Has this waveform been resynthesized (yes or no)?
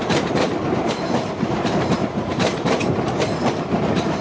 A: yes